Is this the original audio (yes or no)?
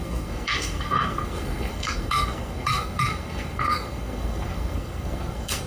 no